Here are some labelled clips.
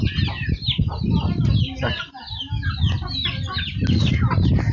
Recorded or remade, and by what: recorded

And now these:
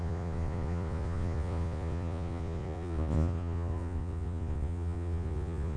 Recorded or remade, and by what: remade, vocoder, Vocos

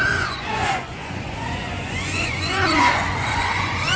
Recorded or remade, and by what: remade, vocoder, Vocos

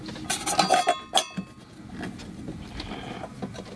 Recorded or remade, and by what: recorded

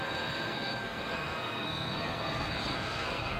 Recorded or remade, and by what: remade, codec, SNAC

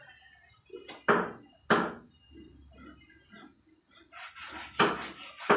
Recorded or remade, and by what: recorded